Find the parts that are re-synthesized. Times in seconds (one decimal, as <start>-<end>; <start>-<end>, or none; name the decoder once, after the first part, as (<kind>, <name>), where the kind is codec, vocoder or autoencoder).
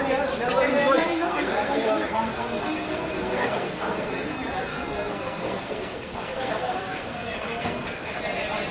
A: 0.7-4.1 (codec, SNAC); 4.7-8.2